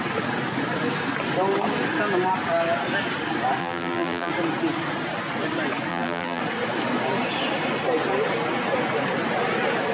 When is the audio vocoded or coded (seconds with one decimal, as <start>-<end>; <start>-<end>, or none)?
3.6-4.3; 5.9-6.4